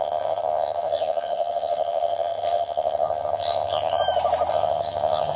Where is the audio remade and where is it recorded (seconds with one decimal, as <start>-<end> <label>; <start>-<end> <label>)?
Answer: 0.0-4.0 remade; 4.0-4.5 recorded; 4.5-5.4 remade